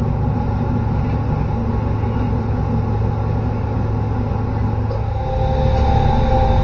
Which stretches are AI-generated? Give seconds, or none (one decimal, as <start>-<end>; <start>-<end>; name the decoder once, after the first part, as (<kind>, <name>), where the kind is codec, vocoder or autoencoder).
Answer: none